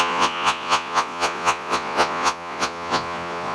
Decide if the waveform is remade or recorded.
remade